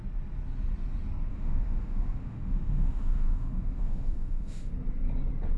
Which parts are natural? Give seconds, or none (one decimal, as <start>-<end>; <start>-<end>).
0.0-1.3; 4.7-5.6